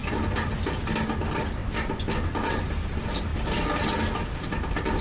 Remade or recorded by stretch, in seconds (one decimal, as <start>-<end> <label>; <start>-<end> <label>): 0.0-5.0 recorded